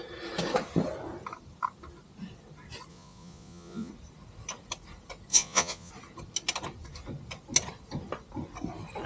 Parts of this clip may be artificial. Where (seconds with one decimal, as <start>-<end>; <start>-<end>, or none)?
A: 2.9-3.9; 5.3-5.9